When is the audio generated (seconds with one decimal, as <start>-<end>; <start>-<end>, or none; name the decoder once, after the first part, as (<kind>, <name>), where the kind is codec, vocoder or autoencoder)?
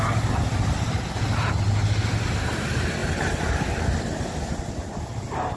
none